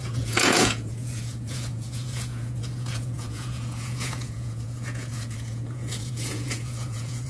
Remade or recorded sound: remade